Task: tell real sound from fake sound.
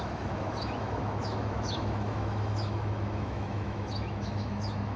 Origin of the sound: fake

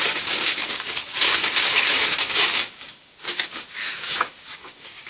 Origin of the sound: fake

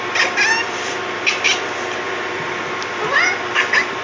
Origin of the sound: real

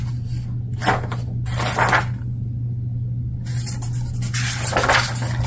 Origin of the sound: real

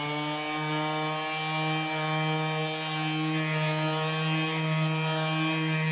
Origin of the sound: real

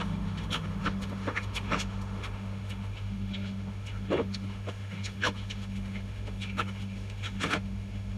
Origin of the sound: fake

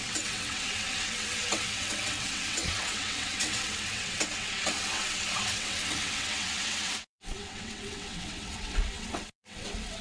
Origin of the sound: fake